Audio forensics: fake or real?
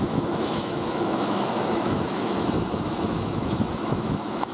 fake